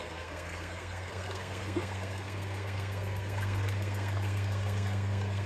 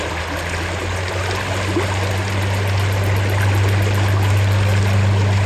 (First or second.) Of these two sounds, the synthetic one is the first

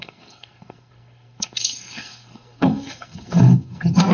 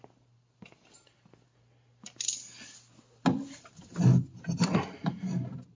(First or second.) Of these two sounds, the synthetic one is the first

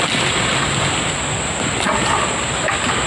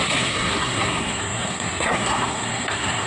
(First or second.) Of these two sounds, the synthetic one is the second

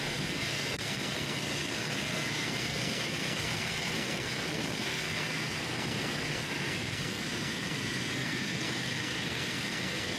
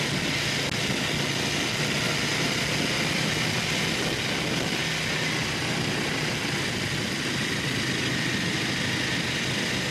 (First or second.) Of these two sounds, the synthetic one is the first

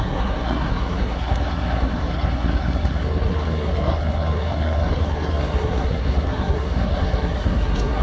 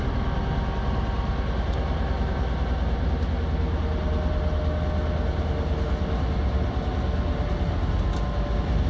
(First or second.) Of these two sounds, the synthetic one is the first